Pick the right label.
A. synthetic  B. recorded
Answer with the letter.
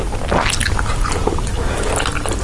B